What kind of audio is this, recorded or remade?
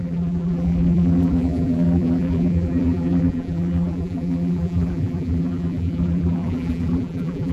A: remade